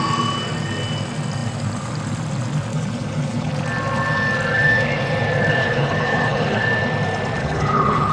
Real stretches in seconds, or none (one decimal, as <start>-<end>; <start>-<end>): 0.0-2.7; 3.5-5.6; 6.6-7.4